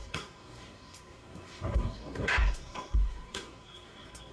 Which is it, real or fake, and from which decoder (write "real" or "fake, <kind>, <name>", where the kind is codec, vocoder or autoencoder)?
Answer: fake, codec, SNAC